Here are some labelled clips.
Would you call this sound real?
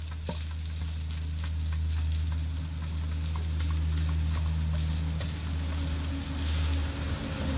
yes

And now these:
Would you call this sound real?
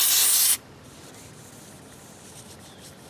yes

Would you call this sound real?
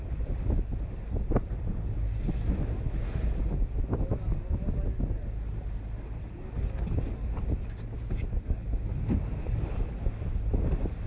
yes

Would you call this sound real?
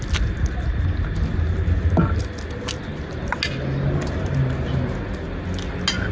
yes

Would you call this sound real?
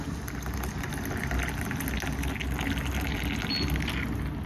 yes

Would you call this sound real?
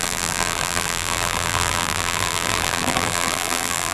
no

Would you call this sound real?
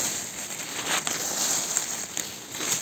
yes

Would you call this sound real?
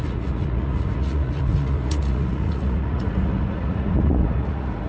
no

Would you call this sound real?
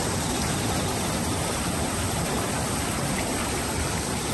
yes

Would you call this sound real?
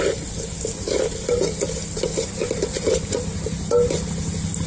yes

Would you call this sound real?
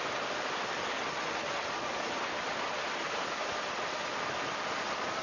yes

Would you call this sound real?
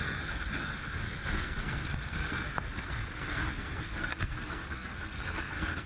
no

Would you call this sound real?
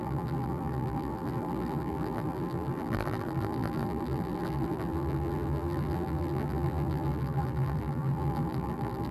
no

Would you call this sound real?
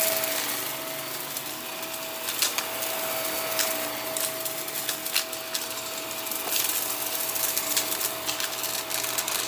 yes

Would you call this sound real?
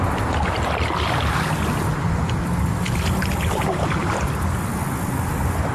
yes